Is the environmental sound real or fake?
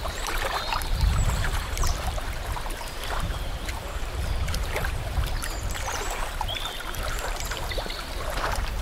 fake